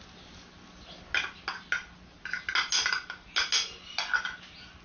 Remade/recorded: recorded